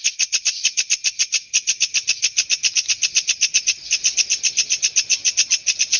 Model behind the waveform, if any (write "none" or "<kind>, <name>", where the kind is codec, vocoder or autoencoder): none